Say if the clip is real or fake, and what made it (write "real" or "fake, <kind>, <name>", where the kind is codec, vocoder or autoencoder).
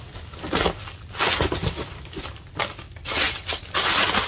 real